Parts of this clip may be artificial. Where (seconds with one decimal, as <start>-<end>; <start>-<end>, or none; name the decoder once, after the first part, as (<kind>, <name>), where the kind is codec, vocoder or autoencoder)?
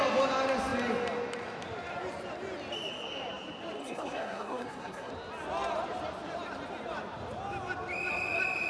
3.8-5.1 (codec, SNAC)